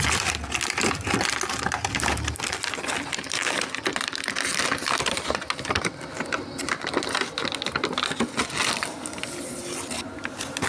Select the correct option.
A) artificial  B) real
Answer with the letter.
B